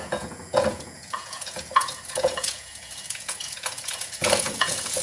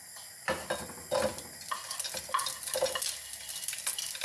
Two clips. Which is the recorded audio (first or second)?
second